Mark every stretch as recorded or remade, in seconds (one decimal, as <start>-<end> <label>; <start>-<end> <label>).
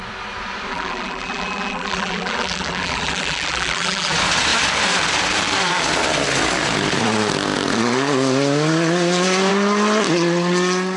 0.0-0.7 recorded; 0.7-4.1 remade; 4.1-11.0 recorded